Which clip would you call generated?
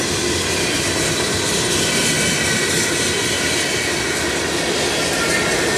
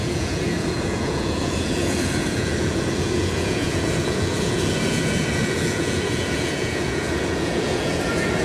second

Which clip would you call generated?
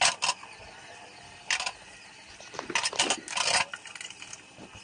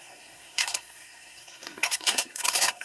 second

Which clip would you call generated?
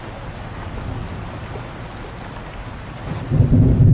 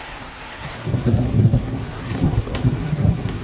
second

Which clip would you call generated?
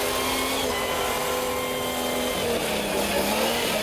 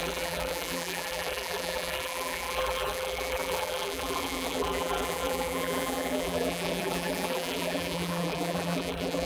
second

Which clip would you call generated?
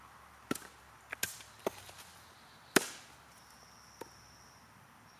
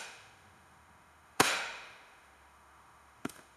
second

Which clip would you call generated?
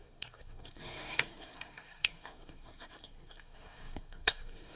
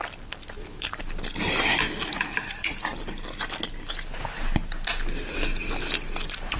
first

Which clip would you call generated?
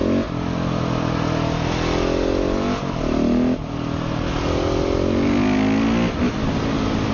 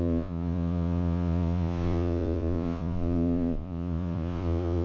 second